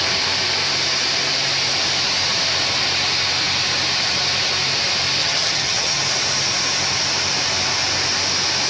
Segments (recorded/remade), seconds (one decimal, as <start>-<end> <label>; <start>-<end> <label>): 0.0-5.2 recorded; 5.2-6.0 remade; 6.0-8.7 recorded

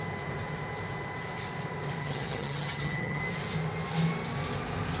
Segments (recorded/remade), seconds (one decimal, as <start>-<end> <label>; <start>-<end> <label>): 0.0-2.0 recorded; 2.0-3.2 remade; 3.2-5.0 recorded